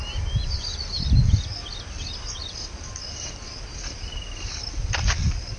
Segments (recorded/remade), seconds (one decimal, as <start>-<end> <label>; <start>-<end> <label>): 0.0-5.6 recorded